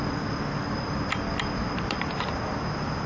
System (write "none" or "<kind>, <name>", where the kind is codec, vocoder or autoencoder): none